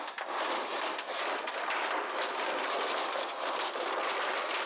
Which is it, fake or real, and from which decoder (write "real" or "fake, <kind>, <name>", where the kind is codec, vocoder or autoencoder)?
real